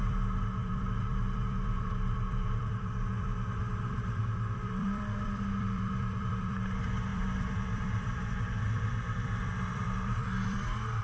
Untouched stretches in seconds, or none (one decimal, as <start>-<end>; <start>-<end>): none